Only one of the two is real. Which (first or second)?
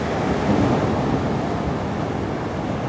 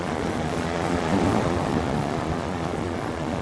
first